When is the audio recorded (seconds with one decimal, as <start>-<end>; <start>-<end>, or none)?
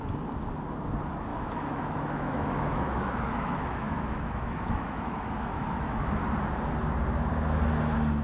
0.0-1.3; 6.1-8.2